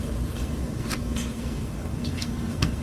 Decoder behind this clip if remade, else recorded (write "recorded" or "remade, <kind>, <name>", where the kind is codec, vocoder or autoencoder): remade, codec, SNAC